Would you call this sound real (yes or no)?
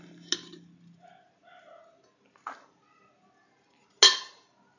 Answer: yes